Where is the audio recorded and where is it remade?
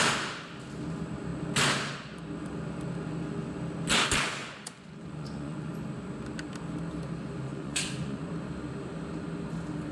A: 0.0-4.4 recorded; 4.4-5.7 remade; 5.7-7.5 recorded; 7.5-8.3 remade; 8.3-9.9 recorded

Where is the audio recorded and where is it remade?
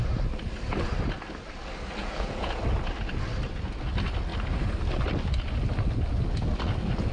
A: 0.0-2.0 recorded; 2.0-2.6 remade; 2.6-7.1 recorded